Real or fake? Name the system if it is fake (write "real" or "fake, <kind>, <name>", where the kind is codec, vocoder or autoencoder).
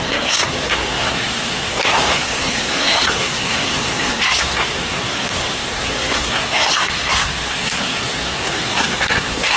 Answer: fake, codec, SNAC